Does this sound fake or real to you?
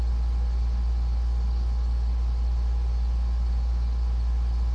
real